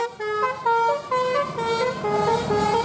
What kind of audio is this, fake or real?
real